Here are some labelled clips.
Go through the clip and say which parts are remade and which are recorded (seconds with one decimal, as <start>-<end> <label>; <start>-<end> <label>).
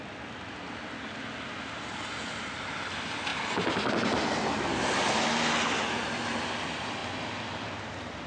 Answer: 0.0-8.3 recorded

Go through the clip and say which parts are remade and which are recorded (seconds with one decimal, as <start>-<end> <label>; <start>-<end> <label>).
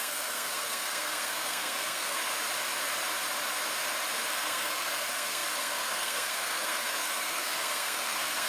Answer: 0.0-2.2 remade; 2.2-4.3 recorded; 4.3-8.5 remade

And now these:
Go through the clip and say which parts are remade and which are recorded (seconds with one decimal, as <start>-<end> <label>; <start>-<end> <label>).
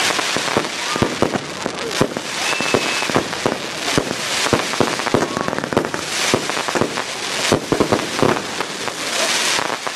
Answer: 0.0-10.0 recorded